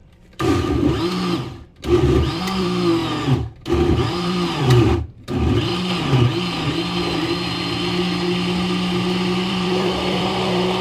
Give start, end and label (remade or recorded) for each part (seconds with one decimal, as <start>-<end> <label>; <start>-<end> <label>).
0.0-3.0 remade; 3.0-3.9 recorded; 3.9-5.7 remade; 5.7-9.5 recorded; 9.5-10.8 remade